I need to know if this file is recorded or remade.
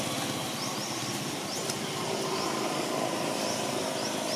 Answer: recorded